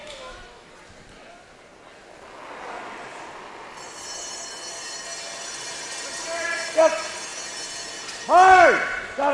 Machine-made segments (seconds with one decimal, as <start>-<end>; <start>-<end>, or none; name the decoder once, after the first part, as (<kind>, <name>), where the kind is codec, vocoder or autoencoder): 0.0-0.7 (autoencoder, DAC-VAE)